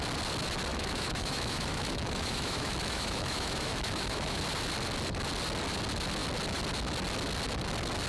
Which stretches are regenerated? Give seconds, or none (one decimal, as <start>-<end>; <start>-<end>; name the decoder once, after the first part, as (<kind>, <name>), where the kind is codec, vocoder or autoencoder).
0.7-4.4 (autoencoder, DAC-VAE)